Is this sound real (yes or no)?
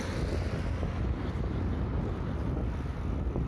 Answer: yes